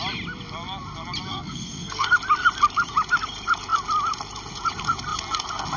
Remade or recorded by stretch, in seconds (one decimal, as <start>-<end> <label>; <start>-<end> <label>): 0.0-1.3 recorded; 1.3-2.1 remade; 2.1-5.8 recorded